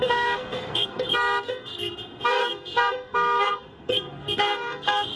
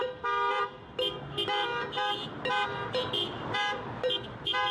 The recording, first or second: second